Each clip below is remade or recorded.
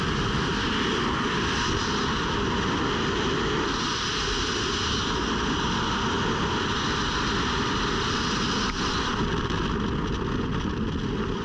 recorded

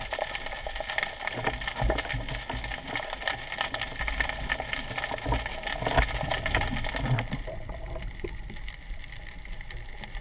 recorded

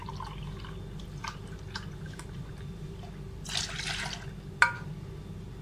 recorded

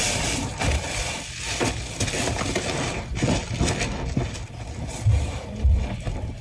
recorded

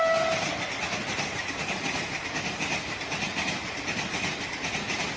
recorded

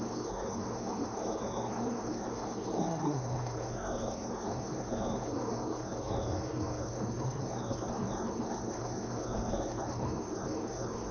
remade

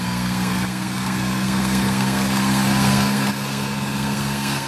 remade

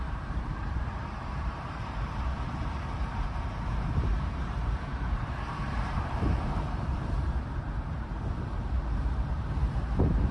remade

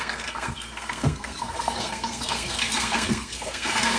remade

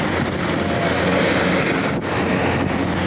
recorded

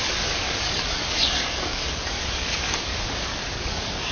remade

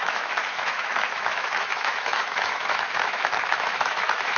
remade